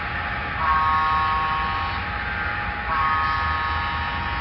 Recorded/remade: recorded